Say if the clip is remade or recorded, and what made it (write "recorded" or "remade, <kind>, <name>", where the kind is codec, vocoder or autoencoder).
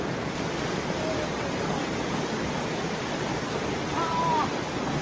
recorded